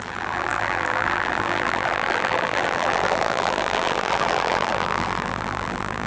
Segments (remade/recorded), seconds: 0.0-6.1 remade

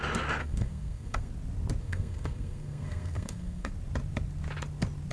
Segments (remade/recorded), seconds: 0.0-0.4 recorded; 0.4-1.3 remade; 1.3-1.8 recorded; 1.8-3.7 remade; 3.7-5.1 recorded

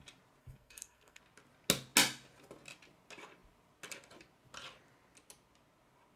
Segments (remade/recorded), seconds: 0.0-0.4 recorded; 0.4-1.2 remade; 1.2-6.2 recorded

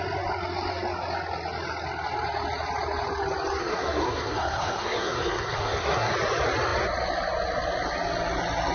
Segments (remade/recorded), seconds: 0.0-3.6 recorded; 3.6-6.1 remade; 6.1-8.7 recorded

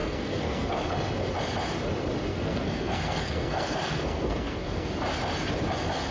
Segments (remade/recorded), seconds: 0.0-0.9 remade; 0.9-2.3 recorded; 2.3-4.9 remade; 4.9-6.1 recorded

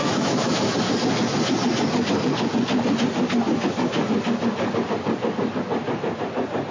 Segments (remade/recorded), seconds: 0.0-0.8 remade; 0.8-6.7 recorded

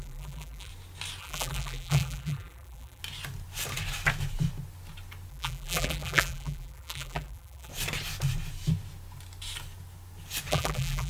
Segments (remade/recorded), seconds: 0.0-0.7 remade; 0.7-1.2 recorded; 1.2-3.0 remade; 3.0-5.3 recorded; 5.3-7.7 remade; 7.7-10.5 recorded; 10.5-11.1 remade